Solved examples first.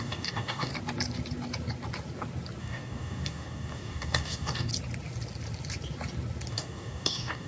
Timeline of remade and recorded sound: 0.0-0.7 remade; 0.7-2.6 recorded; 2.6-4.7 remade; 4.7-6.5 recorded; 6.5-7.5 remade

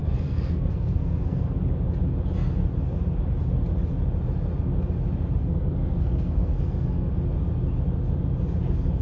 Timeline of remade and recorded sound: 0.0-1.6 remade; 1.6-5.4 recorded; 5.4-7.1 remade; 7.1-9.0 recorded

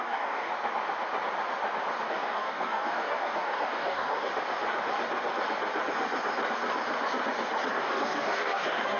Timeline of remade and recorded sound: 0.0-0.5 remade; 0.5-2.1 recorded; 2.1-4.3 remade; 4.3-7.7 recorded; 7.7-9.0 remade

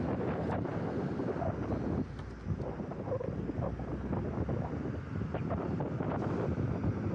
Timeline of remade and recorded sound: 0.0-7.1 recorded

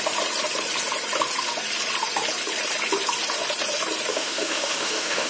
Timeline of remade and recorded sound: 0.0-4.1 recorded; 4.1-5.3 remade

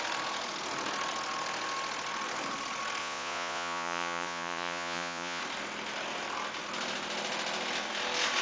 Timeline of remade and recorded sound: 0.0-3.0 recorded; 3.0-5.4 remade; 5.4-8.4 recorded